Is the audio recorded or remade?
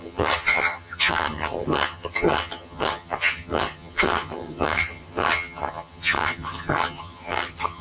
remade